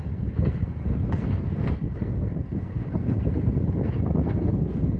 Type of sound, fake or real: fake